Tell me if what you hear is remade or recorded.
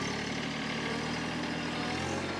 recorded